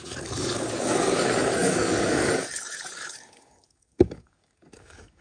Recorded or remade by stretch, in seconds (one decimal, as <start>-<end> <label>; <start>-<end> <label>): 0.0-5.2 remade